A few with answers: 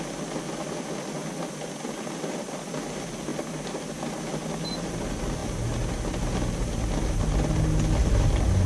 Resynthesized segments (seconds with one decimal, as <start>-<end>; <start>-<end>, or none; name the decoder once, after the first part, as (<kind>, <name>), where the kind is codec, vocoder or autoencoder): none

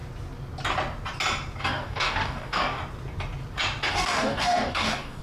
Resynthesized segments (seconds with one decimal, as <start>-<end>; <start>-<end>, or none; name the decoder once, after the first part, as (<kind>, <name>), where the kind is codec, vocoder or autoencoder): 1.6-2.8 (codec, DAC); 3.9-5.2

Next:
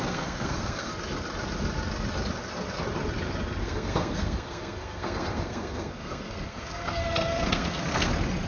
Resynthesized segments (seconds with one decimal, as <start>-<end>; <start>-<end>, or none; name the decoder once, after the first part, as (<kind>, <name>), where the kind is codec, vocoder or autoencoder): 0.0-0.9 (codec, SNAC); 3.6-8.1

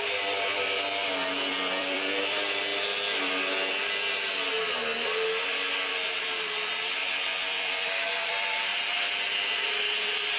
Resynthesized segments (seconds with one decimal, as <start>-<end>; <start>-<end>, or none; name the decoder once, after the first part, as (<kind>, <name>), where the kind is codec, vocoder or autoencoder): 0.0-2.7 (vocoder, BigVGAN v2); 6.3-8.7; 10.0-10.4

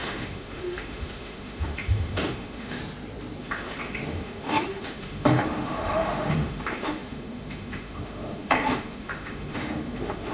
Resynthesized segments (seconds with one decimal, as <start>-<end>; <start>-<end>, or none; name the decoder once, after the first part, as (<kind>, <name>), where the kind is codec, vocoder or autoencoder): 0.0-2.8 (autoencoder, DAC-VAE); 3.4-10.3

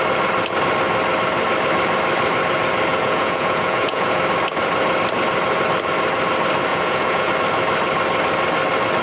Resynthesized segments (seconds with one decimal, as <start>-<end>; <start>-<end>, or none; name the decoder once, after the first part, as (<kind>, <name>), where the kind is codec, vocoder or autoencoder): 2.9-4.2 (vocoder, Vocos); 6.7-7.3

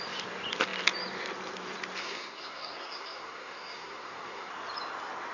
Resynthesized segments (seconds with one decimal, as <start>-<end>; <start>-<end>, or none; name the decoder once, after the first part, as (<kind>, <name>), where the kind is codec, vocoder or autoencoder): 2.0-4.5 (codec, SNAC)

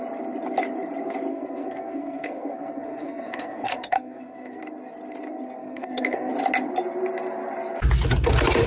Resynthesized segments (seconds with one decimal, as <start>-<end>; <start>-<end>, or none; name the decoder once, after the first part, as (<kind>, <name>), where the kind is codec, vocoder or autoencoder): 1.3-4.6 (codec, SNAC); 5.6-6.3